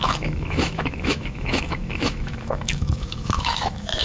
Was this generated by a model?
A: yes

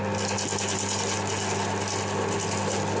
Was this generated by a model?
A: no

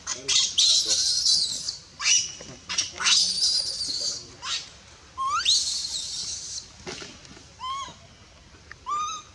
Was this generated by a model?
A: no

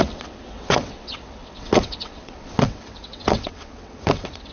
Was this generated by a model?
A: yes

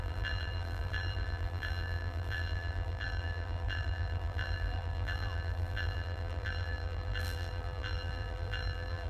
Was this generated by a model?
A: yes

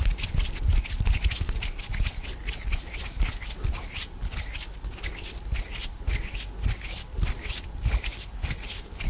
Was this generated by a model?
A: no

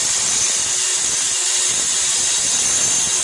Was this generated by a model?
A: no